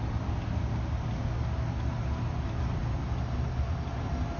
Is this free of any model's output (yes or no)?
yes